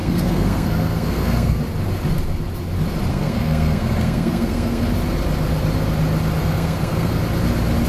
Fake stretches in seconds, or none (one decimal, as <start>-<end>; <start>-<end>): 0.0-1.6; 3.1-4.8; 6.4-7.2